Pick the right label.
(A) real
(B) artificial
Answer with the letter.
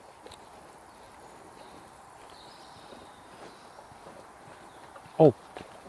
B